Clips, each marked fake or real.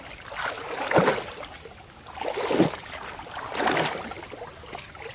real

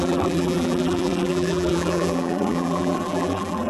fake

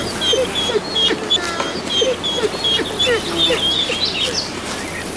real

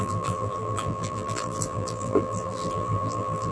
fake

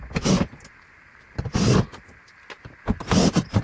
real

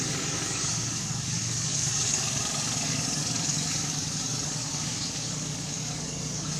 fake